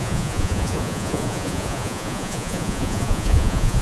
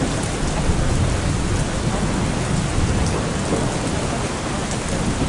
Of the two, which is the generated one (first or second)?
first